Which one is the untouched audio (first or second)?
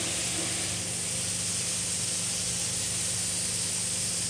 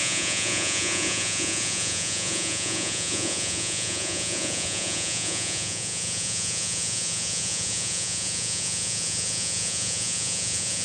first